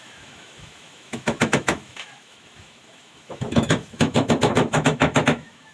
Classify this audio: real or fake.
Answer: fake